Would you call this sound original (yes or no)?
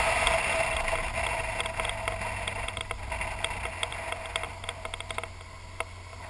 yes